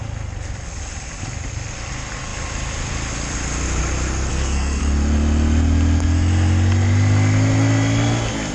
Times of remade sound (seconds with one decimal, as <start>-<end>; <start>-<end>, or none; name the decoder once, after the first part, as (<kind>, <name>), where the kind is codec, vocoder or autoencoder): 4.3-4.8 (codec, SNAC)